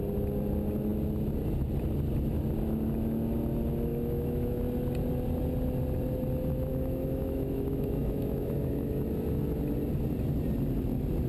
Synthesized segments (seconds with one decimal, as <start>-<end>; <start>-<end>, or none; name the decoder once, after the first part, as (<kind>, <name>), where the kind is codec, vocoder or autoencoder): 3.9-4.6 (autoencoder, DAC-VAE); 6.7-8.9